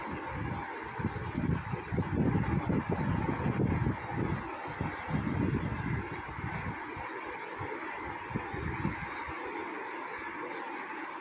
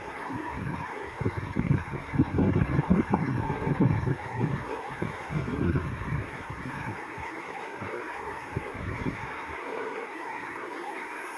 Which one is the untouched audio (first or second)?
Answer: first